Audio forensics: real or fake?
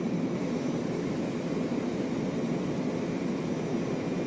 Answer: real